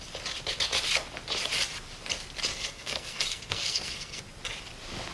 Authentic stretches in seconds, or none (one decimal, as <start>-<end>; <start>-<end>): 0.0-2.5; 4.2-5.1